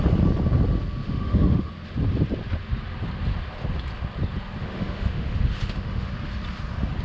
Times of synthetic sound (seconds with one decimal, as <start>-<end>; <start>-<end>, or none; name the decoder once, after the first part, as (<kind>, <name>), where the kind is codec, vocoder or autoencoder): 1.0-1.7 (autoencoder, DAC-VAE); 4.6-6.1